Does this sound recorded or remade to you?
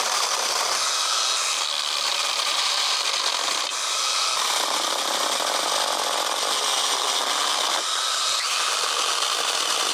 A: recorded